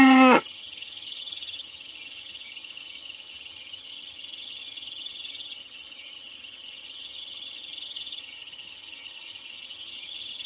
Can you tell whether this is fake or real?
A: fake